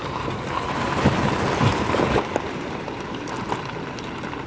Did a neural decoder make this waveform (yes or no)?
no